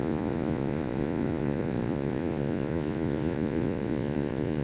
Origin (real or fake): fake